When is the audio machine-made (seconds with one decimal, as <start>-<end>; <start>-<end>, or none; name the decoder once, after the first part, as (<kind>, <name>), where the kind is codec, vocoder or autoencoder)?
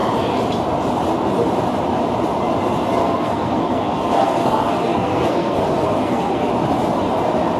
3.0-6.5 (codec, SNAC)